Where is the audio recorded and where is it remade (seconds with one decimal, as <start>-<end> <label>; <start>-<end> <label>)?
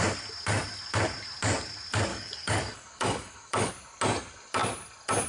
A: 0.0-2.1 recorded; 2.1-3.7 remade; 3.7-5.3 recorded